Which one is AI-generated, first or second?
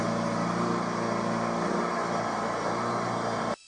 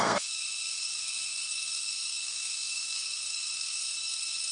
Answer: second